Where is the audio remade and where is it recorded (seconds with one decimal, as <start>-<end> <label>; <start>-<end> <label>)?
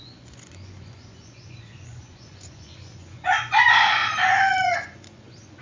0.0-4.0 remade; 4.0-4.5 recorded; 4.5-5.6 remade